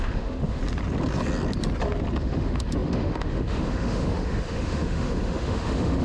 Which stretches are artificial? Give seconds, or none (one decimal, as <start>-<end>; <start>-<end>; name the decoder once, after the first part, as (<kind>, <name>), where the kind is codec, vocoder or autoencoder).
0.0-0.6 (autoencoder, DAC-VAE); 2.2-6.0